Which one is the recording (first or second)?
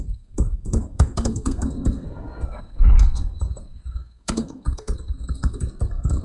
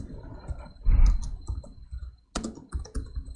second